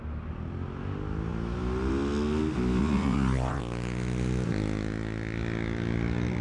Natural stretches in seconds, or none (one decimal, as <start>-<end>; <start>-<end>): 0.0-2.8; 3.6-6.4